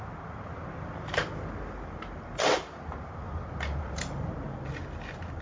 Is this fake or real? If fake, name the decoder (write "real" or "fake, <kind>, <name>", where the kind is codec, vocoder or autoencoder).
real